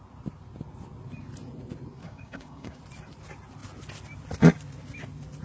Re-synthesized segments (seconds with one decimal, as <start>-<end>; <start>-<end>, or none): 2.0-2.8